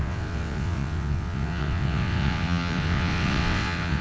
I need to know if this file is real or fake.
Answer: fake